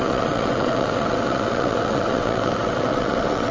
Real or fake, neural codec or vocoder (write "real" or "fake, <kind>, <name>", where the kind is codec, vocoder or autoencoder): fake, vocoder, WaveNeXt